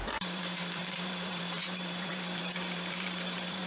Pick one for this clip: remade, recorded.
remade